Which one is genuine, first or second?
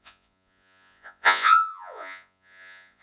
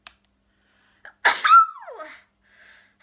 second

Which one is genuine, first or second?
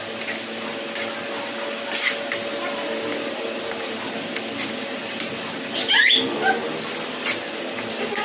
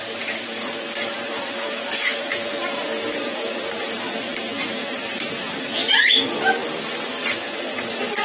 first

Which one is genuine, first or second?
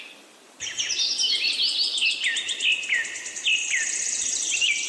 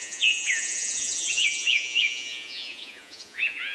first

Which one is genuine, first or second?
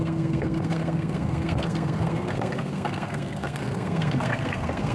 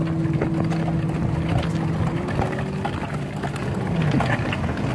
second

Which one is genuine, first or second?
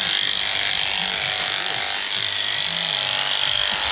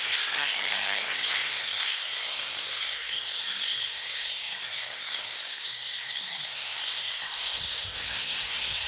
first